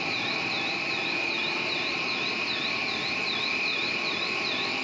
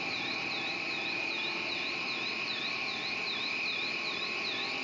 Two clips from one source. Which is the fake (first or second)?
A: first